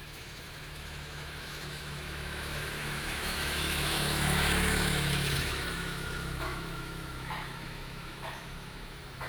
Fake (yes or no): yes